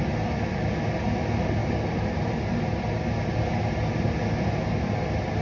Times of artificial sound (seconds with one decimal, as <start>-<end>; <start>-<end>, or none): none